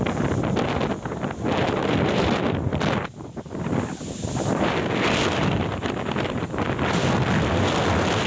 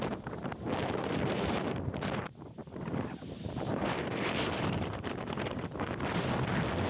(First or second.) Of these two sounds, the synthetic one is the second